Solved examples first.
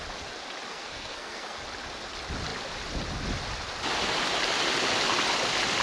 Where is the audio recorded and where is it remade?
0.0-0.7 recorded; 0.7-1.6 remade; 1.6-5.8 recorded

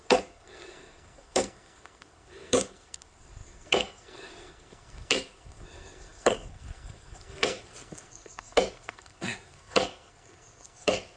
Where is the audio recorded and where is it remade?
0.0-11.2 remade

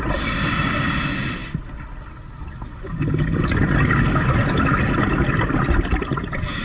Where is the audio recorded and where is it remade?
0.0-6.6 recorded

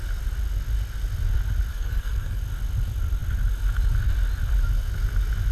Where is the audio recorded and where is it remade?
0.0-1.7 recorded; 1.7-2.4 remade; 2.4-5.5 recorded

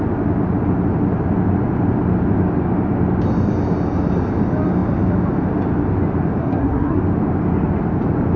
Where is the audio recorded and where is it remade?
0.0-6.4 recorded; 6.4-7.0 remade; 7.0-8.4 recorded

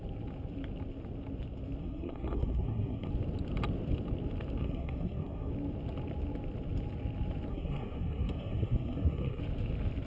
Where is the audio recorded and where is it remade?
0.0-1.8 recorded; 1.8-3.1 remade; 3.1-4.6 recorded; 4.6-5.5 remade; 5.5-7.5 recorded; 7.5-9.4 remade; 9.4-10.1 recorded

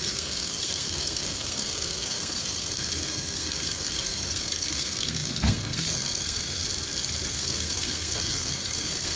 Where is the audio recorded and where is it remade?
0.0-6.6 remade; 6.6-7.3 recorded; 7.3-9.2 remade

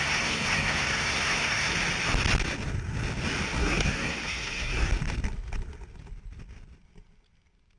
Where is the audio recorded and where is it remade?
0.0-1.7 remade; 1.7-3.6 recorded; 3.6-4.9 remade; 4.9-7.8 recorded